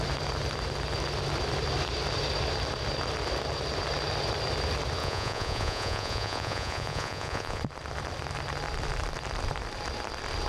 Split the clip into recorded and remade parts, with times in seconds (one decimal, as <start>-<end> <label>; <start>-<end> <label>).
0.0-5.0 recorded; 5.0-7.6 remade; 7.6-10.5 recorded